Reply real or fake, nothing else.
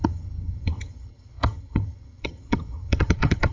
fake